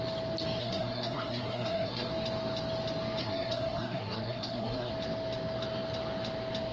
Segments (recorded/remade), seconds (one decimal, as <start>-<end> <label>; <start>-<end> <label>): 0.0-0.6 recorded; 0.6-2.1 remade; 2.1-3.2 recorded; 3.2-4.9 remade; 4.9-6.7 recorded